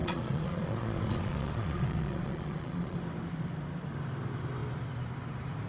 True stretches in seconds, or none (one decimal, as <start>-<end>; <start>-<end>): 3.0-5.7